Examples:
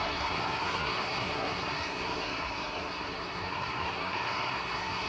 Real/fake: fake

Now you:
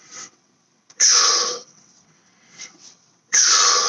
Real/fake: fake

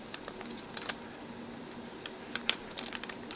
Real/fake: real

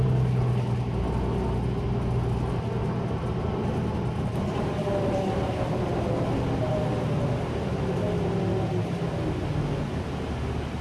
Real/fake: real